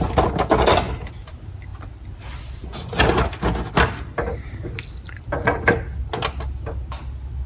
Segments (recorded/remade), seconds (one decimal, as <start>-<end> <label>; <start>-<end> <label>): 0.0-7.5 recorded